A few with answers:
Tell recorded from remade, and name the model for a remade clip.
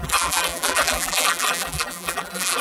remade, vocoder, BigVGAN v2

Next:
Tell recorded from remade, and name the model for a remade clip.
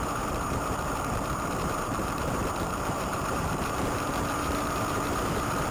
remade, vocoder, BigVGAN v2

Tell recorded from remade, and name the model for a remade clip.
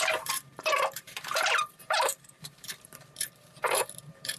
remade, vocoder, BigVGAN v2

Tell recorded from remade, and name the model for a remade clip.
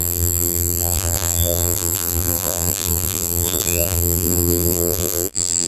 remade, vocoder, BigVGAN v2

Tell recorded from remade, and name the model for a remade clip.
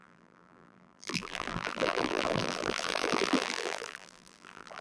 remade, vocoder, BigVGAN v2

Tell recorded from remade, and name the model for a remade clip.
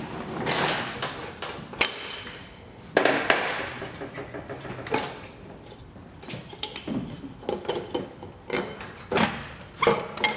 remade, vocoder, BigVGAN v2